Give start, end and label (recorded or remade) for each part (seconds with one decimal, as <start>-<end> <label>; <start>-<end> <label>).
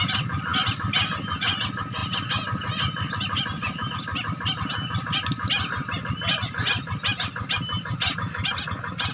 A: 0.0-9.1 recorded